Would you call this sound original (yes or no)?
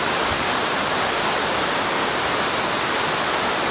yes